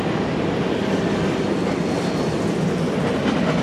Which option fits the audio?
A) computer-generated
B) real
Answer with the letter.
B